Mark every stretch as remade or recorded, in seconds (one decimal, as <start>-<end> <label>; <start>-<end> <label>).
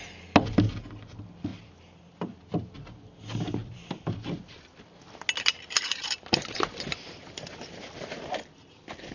0.0-1.5 recorded; 1.5-2.4 remade; 2.4-3.6 recorded; 3.6-4.7 remade; 4.7-9.1 recorded